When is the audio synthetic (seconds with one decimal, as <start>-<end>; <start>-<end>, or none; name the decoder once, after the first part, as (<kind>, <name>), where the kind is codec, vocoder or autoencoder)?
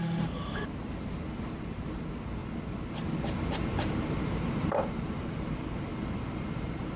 0.0-2.4 (vocoder, BigVGAN v2); 3.8-5.9